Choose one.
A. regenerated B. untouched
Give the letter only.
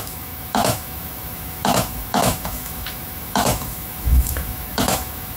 A